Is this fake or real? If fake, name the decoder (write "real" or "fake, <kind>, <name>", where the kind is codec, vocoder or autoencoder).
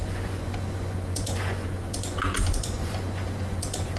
fake, vocoder, Vocos